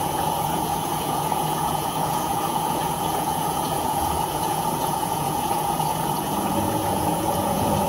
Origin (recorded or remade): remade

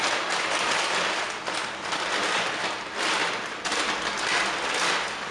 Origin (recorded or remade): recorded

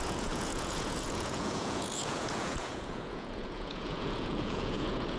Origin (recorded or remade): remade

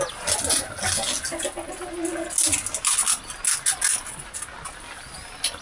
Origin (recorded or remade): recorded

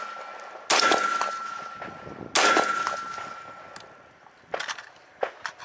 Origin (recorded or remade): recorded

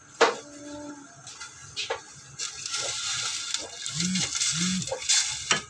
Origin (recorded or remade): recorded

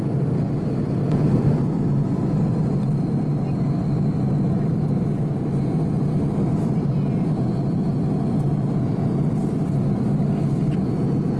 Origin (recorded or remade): recorded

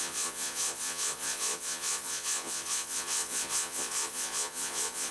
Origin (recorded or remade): remade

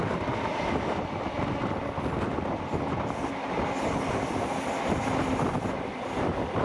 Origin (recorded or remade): recorded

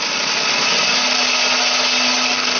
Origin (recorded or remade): recorded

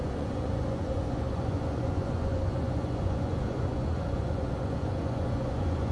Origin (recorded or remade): remade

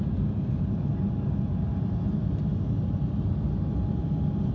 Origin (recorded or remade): recorded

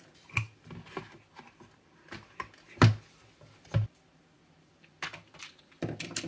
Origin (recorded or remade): recorded